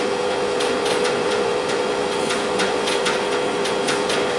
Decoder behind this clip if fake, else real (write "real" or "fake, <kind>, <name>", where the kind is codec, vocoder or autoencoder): fake, vocoder, Vocos